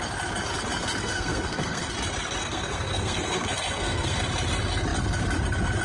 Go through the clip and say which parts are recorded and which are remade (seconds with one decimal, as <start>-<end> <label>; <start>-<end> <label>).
0.0-1.0 recorded; 1.0-1.9 remade; 1.9-2.4 recorded; 2.4-4.2 remade; 4.2-5.8 recorded

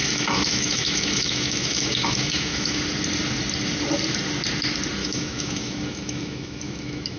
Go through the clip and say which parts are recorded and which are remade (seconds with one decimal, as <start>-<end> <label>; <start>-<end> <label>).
0.0-2.8 remade; 2.8-5.0 recorded; 5.0-7.2 remade

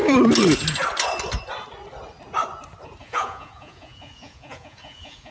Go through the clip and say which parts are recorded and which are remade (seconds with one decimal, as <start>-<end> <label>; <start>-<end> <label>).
0.0-3.0 recorded; 3.0-5.3 remade

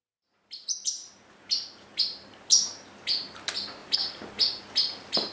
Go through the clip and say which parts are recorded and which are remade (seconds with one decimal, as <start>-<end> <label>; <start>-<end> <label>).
0.0-5.3 recorded